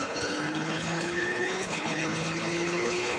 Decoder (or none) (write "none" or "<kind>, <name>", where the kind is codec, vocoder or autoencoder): codec, HILCodec